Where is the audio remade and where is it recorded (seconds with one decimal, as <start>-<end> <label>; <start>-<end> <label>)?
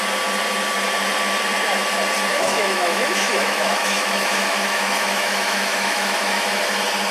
0.0-2.3 recorded; 2.3-6.6 remade; 6.6-7.1 recorded